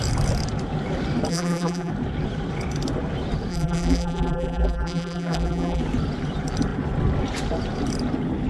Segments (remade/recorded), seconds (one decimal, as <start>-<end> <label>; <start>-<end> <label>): 0.0-1.3 recorded; 1.3-1.9 remade; 1.9-3.5 recorded; 3.5-5.8 remade; 5.8-8.5 recorded